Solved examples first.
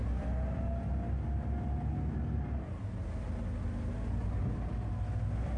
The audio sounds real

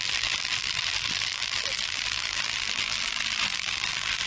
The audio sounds fake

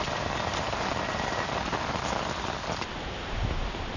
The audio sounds real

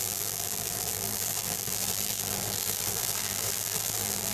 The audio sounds fake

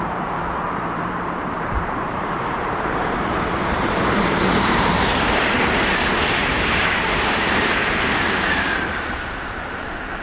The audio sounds fake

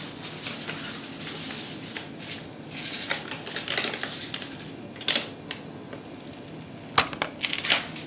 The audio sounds real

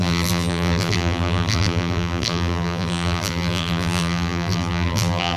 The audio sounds fake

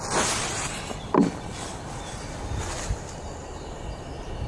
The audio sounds real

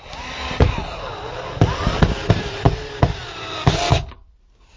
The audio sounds real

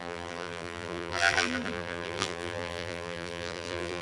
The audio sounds fake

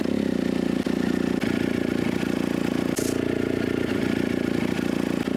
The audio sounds real